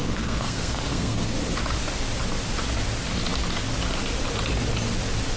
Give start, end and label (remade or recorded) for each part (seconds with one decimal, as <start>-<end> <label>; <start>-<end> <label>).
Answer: 0.0-1.3 remade; 1.3-5.4 recorded